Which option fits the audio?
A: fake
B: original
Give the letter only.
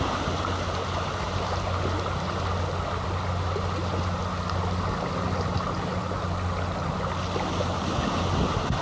B